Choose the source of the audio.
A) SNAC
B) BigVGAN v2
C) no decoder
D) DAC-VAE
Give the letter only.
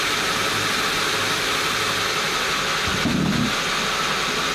C